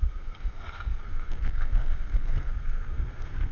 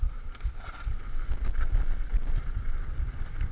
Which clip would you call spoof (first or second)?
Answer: first